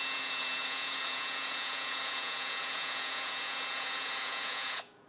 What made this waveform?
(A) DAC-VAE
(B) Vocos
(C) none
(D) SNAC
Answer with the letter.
B